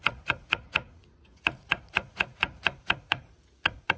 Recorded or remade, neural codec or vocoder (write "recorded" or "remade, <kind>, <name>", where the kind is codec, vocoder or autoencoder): remade, vocoder, Vocos